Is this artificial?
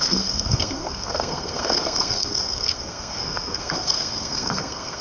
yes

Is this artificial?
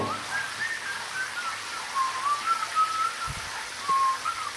no